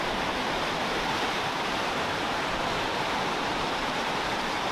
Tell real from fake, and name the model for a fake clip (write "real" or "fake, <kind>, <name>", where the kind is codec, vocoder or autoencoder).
fake, vocoder, BigVGAN v2